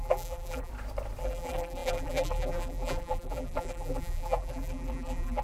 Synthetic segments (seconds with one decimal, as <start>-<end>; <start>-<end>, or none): 0.0-0.7; 1.2-5.4